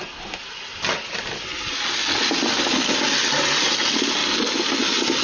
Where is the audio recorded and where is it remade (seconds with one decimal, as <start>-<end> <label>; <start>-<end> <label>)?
0.0-5.2 recorded